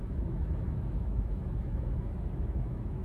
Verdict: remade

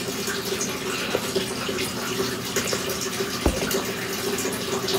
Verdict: recorded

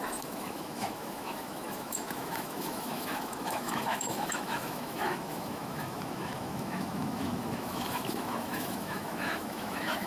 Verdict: remade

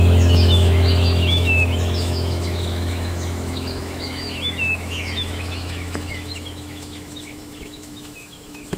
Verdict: remade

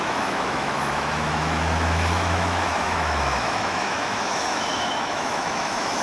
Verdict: remade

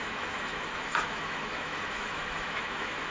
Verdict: remade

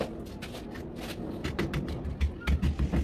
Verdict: recorded